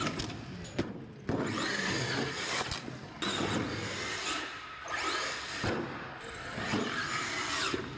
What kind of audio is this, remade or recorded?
recorded